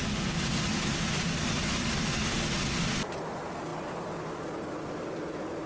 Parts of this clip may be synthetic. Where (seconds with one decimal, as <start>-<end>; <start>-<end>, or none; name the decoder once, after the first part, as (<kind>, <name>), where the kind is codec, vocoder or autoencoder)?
1.6-2.7 (vocoder, BigVGAN v2)